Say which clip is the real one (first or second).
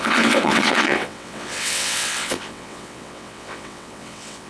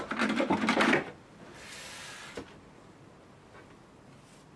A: second